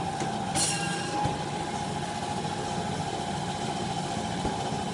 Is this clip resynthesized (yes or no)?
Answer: no